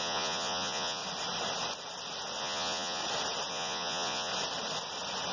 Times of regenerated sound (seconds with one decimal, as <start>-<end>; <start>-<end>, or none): 0.0-1.0; 2.4-3.0; 3.5-4.3